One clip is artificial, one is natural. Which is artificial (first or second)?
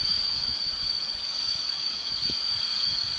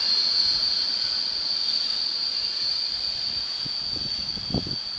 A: first